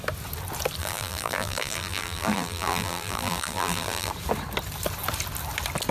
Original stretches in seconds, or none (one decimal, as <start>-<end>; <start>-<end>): 0.0-0.8; 4.1-5.9